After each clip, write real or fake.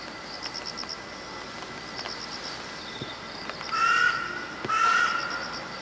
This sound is real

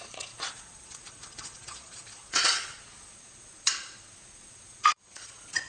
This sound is fake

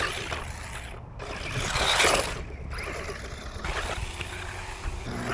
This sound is real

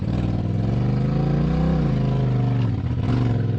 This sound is real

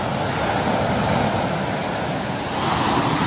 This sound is real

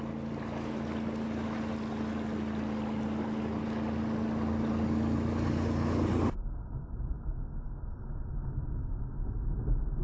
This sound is real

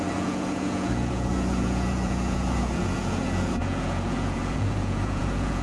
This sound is fake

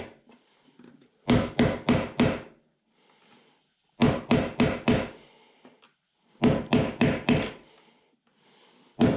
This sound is real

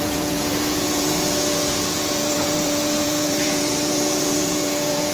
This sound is fake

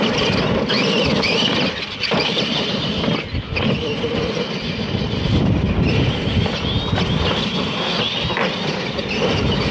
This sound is real